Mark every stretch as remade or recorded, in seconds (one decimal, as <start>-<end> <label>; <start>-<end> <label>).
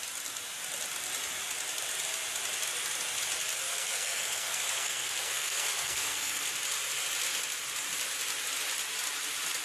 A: 0.0-3.7 recorded; 3.7-6.5 remade; 6.5-9.6 recorded